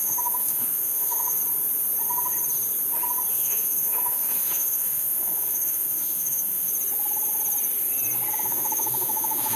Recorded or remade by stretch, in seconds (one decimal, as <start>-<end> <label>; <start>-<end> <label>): 0.0-1.4 remade; 1.4-3.3 recorded; 3.3-6.7 remade; 6.7-8.3 recorded; 8.3-9.6 remade